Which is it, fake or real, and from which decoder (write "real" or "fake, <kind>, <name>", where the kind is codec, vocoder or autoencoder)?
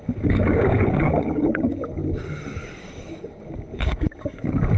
fake, codec, DAC